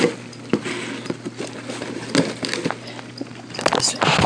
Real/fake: real